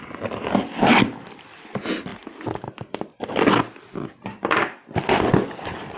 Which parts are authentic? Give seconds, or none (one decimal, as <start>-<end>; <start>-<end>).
0.0-6.0